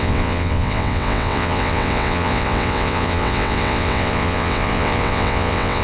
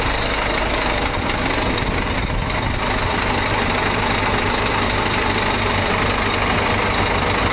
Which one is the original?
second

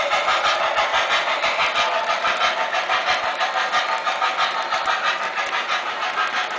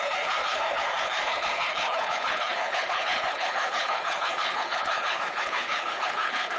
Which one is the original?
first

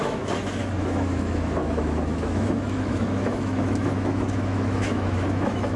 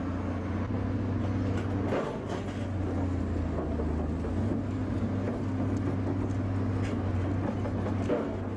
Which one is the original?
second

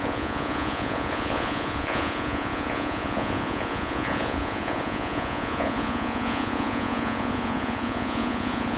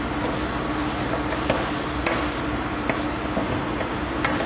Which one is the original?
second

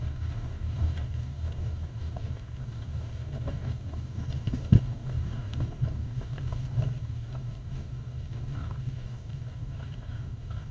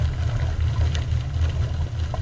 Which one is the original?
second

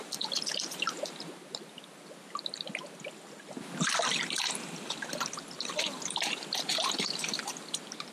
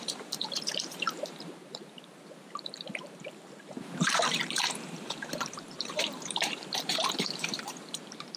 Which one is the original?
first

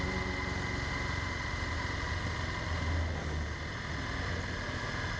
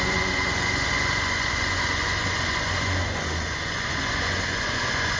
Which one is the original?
first